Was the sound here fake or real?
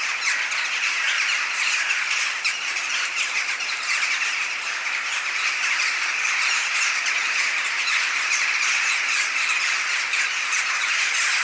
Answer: fake